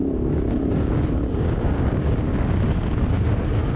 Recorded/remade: remade